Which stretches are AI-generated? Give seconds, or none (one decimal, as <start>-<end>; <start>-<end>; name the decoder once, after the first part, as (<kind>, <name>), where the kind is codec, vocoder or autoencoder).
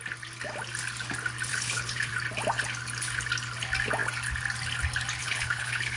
1.5-2.1 (codec, HILCodec); 5.2-6.0